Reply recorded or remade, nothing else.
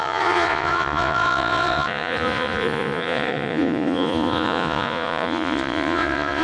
remade